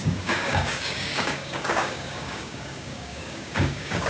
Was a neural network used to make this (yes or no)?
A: yes